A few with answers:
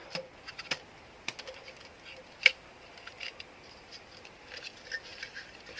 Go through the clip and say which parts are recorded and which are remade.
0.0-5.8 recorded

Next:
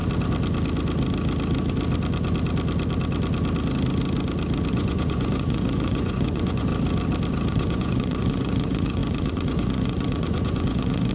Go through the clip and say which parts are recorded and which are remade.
0.0-4.7 recorded; 4.7-6.7 remade; 6.7-7.5 recorded; 7.5-11.1 remade

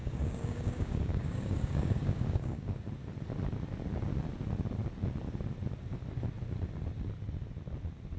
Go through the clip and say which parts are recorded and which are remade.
0.0-2.7 remade; 2.7-8.2 recorded

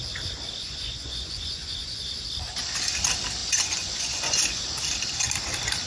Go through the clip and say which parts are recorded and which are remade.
0.0-0.6 recorded; 0.6-2.1 remade; 2.1-3.4 recorded; 3.4-4.7 remade; 4.7-5.9 recorded

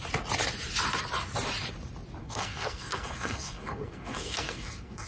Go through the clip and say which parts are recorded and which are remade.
0.0-2.2 recorded; 2.2-5.1 remade

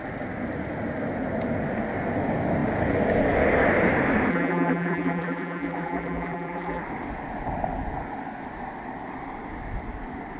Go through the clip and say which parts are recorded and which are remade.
0.0-4.3 recorded; 4.3-6.8 remade; 6.8-10.4 recorded